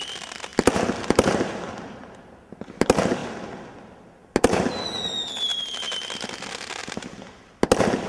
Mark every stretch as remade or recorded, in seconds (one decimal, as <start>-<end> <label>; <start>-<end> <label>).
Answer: 0.0-8.1 recorded